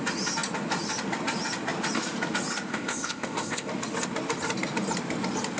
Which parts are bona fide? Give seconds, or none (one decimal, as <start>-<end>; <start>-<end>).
0.0-2.7; 3.7-5.6